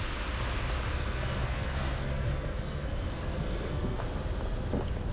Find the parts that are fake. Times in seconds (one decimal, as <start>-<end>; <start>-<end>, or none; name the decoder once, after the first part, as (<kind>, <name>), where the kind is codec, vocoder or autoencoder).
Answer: 0.9-4.0 (codec, SNAC)